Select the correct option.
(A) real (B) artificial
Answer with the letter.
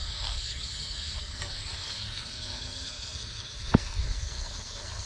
B